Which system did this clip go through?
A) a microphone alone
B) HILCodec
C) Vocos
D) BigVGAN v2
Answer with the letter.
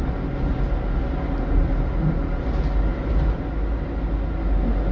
A